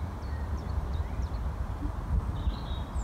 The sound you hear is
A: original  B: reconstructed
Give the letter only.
B